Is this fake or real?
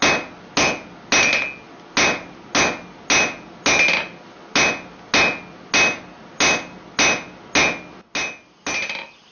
real